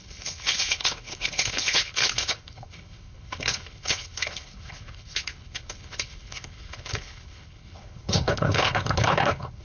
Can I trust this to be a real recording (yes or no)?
no